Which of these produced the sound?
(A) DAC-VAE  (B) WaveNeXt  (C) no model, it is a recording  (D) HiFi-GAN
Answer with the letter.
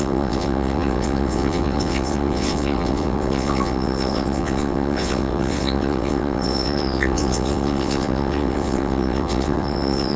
B